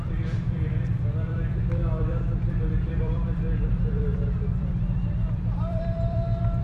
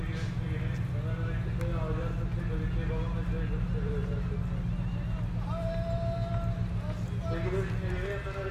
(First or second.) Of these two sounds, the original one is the second